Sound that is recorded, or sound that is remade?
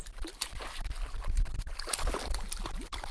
remade